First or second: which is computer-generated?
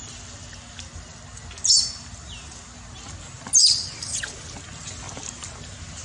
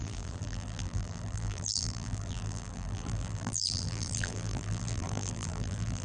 second